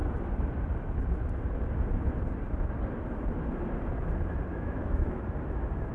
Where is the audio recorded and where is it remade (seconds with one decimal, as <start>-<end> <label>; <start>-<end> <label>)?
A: 0.0-4.5 recorded; 4.5-5.2 remade; 5.2-5.9 recorded